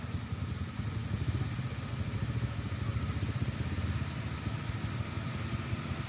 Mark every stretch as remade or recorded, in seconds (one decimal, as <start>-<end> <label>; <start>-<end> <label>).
0.0-6.1 recorded